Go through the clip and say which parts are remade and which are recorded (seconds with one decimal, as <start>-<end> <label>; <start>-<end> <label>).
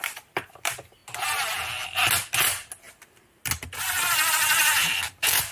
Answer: 0.0-1.0 remade; 1.0-4.3 recorded; 4.3-5.5 remade